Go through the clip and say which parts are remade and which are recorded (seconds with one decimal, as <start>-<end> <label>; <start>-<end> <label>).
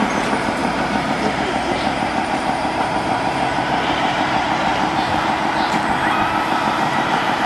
0.0-4.7 remade; 4.7-6.5 recorded; 6.5-7.5 remade